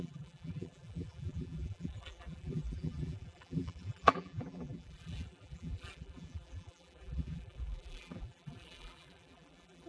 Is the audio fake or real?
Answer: fake